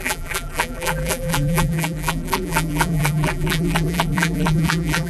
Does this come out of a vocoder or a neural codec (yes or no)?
yes